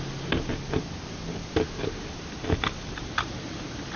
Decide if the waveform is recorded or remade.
recorded